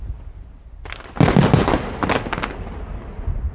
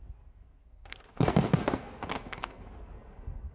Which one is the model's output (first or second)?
second